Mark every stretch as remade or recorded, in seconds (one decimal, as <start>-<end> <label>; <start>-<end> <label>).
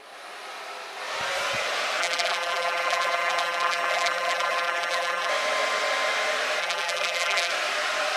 0.0-2.0 recorded; 2.0-5.3 remade; 5.3-6.6 recorded; 6.6-7.5 remade; 7.5-8.2 recorded